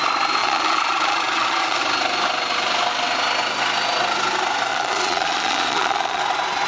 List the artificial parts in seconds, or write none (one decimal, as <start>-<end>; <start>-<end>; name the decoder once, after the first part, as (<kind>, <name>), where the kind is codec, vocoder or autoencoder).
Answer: 0.4-1.8 (vocoder, Vocos); 4.7-6.2